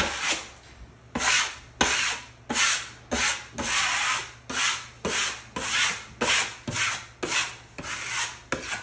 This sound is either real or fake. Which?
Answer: real